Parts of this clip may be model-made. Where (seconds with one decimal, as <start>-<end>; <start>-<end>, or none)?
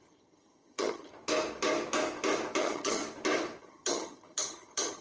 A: 0.0-1.1; 2.6-3.0; 3.6-5.0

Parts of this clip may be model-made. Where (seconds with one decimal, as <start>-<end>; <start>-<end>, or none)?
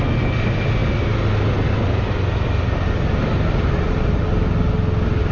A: none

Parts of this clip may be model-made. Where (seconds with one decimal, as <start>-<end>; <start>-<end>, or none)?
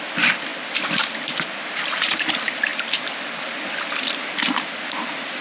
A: none